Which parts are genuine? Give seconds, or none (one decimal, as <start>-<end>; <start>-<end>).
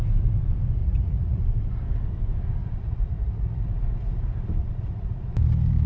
0.0-0.8; 1.4-2.6; 3.6-4.6; 5.3-5.9